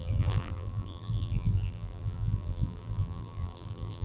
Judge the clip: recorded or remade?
remade